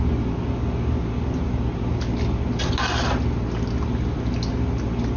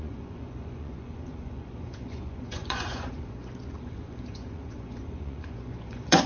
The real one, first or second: first